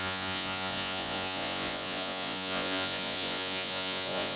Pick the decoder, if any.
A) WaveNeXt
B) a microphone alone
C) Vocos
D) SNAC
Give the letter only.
C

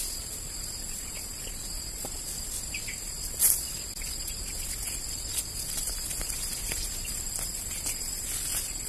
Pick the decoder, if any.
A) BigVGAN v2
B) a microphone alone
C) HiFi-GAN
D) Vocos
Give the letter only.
B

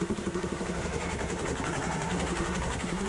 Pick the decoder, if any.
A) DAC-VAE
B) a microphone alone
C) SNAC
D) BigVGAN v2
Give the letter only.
C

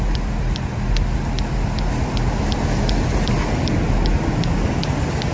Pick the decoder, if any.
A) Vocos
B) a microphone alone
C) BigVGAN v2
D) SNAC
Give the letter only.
B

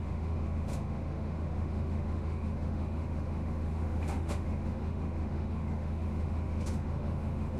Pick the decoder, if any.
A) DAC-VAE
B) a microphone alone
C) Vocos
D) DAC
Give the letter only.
A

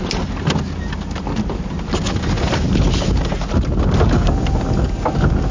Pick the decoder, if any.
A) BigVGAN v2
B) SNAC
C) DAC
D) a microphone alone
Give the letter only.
D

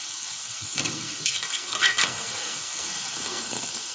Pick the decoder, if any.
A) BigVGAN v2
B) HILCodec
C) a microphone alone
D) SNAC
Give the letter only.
D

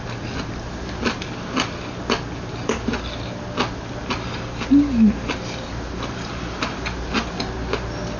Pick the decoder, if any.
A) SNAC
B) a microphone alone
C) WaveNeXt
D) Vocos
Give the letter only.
B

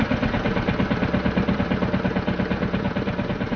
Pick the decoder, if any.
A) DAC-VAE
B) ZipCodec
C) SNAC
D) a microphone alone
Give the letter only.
D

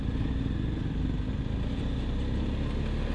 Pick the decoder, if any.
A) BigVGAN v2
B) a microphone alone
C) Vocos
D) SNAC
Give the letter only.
B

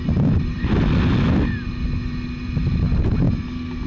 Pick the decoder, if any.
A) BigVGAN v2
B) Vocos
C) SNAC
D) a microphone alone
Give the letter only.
D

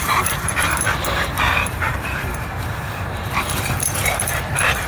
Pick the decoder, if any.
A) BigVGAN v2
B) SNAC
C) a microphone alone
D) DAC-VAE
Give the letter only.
A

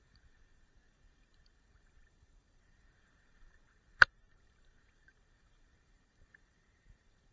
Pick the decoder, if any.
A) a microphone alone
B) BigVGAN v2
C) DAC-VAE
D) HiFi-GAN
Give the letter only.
B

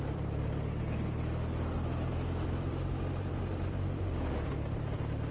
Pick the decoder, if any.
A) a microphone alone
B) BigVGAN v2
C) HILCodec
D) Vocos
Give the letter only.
B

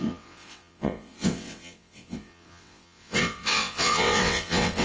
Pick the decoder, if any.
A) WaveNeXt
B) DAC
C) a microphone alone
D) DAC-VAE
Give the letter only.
A